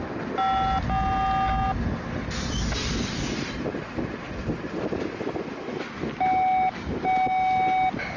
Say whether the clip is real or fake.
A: real